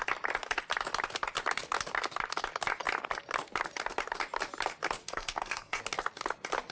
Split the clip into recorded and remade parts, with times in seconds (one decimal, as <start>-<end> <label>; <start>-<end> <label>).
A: 0.0-5.0 recorded; 5.0-5.8 remade; 5.8-6.7 recorded